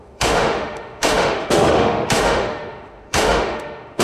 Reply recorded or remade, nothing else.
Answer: remade